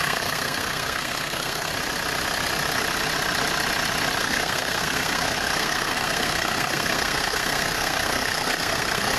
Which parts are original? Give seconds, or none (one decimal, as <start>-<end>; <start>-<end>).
1.7-4.2